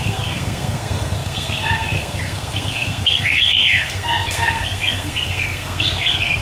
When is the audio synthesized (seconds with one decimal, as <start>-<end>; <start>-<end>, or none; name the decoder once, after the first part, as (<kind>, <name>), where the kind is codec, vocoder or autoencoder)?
0.0-6.4 (codec, SNAC)